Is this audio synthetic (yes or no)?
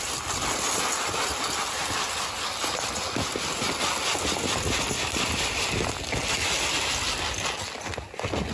no